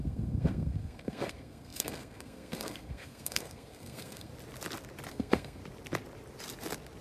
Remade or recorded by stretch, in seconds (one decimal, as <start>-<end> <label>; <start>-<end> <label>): 0.0-4.3 remade; 4.3-5.1 recorded; 5.1-5.6 remade; 5.6-7.0 recorded